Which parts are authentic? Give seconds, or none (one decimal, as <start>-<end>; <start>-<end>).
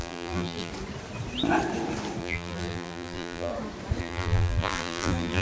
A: 0.7-2.2; 3.5-4.0